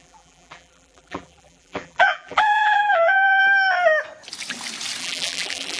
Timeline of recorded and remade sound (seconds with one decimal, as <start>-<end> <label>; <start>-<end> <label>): 0.0-3.4 remade; 3.4-5.0 recorded; 5.0-5.8 remade